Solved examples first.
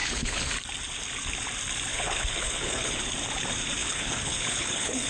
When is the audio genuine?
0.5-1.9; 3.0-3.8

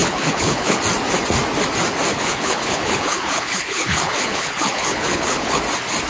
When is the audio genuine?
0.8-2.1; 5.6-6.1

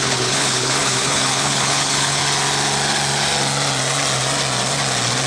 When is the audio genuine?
2.2-5.3